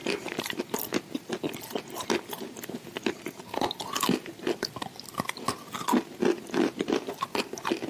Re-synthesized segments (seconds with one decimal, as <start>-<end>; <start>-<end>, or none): none